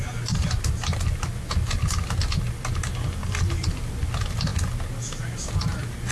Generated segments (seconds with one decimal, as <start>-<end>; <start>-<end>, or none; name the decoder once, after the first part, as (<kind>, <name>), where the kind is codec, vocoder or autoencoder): 3.2-3.9 (vocoder, BigVGAN v2)